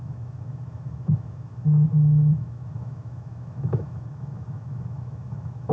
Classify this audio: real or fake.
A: fake